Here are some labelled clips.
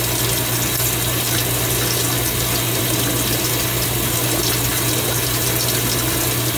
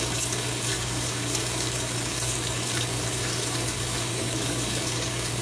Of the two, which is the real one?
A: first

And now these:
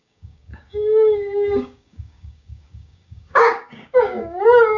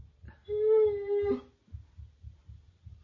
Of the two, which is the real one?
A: second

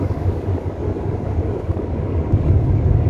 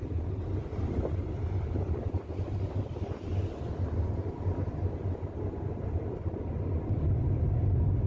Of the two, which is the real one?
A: second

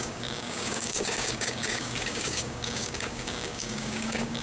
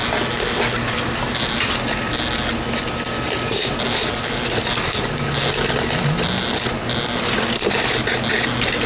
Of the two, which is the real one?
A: second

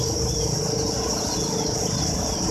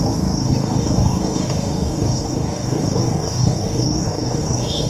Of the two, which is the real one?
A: first